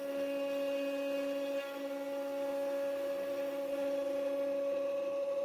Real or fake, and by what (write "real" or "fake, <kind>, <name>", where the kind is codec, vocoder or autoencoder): real